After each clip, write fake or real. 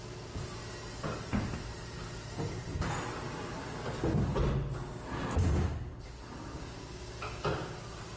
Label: real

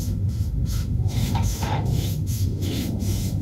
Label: fake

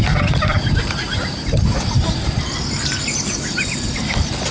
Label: real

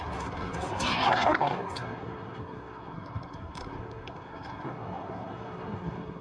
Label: fake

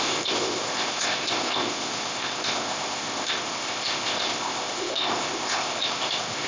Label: fake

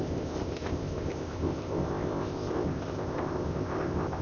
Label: fake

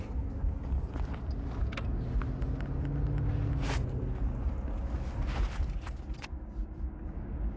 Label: real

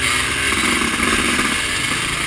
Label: real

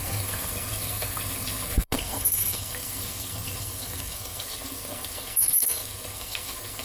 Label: fake